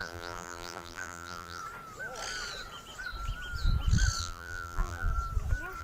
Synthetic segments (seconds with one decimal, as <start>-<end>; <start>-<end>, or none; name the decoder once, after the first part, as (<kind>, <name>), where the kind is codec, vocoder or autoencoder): 0.0-1.6 (vocoder, BigVGAN v2); 4.2-5.1